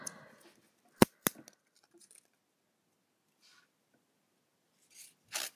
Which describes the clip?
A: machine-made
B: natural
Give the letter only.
B